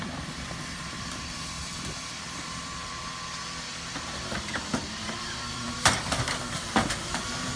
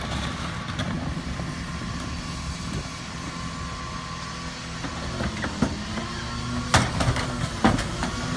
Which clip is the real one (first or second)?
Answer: second